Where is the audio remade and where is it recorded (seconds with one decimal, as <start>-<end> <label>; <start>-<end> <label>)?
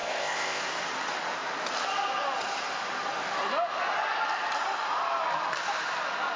0.0-0.6 remade; 0.6-6.4 recorded